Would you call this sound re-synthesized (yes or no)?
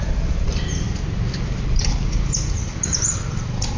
yes